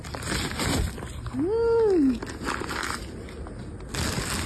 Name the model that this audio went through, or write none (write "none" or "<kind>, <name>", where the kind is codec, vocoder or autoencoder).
none